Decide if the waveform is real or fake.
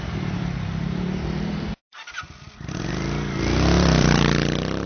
fake